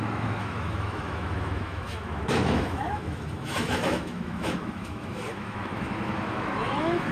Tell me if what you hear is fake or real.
fake